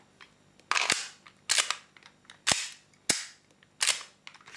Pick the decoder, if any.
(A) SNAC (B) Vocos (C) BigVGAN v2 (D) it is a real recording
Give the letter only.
D